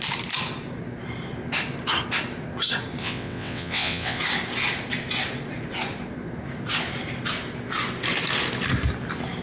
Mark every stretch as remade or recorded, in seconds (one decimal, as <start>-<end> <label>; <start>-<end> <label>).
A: 0.0-3.0 recorded; 3.0-4.2 remade; 4.2-9.4 recorded

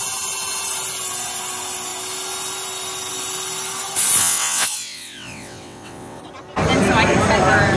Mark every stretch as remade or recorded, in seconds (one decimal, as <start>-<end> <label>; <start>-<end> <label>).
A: 0.0-4.2 recorded; 4.2-6.2 remade; 6.2-7.8 recorded

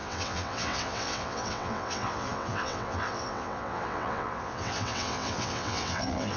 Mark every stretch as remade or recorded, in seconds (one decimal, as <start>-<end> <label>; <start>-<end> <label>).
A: 0.0-6.4 remade

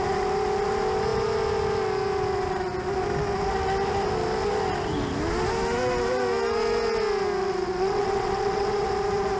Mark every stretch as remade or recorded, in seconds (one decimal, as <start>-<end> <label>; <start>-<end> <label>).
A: 0.0-7.4 recorded; 7.4-8.9 remade; 8.9-9.4 recorded

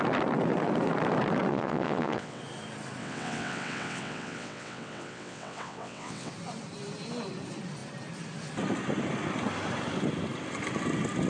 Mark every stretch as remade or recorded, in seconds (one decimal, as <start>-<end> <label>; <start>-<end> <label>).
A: 0.0-1.5 recorded; 1.5-2.4 remade; 2.4-3.0 recorded; 3.0-6.3 remade; 6.3-11.3 recorded